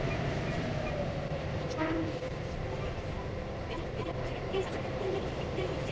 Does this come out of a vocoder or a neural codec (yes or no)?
yes